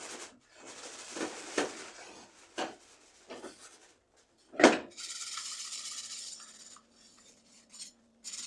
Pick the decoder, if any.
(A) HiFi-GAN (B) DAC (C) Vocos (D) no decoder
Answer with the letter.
D